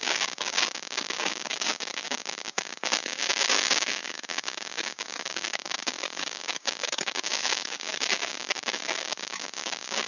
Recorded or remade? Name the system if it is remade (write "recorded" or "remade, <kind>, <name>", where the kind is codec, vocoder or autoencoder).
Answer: remade, codec, DAC